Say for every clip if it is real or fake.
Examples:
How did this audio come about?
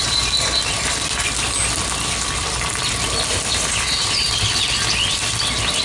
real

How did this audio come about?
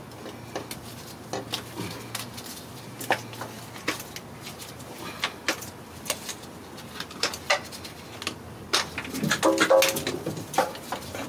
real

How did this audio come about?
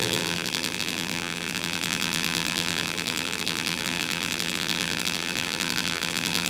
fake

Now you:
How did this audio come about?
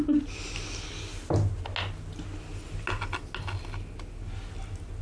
real